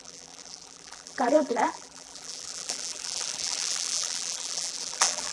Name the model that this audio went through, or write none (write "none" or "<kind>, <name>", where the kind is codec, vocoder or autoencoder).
vocoder, BigVGAN v2